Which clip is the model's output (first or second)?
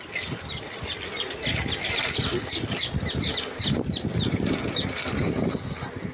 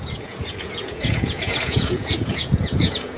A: second